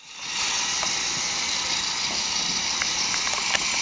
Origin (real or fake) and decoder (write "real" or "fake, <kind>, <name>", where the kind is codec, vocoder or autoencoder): real